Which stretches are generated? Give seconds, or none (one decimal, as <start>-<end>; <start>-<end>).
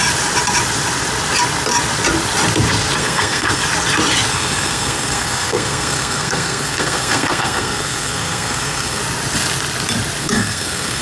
3.0-3.6; 4.3-9.0; 10.2-11.0